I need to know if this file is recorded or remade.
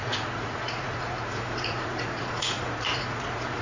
remade